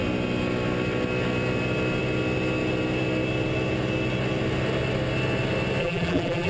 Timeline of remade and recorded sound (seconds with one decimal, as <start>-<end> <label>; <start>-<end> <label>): 0.0-5.8 recorded; 5.8-6.5 remade